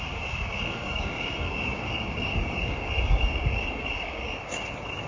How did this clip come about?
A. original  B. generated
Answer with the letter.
B